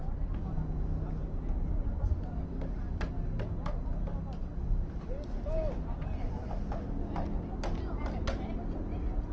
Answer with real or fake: real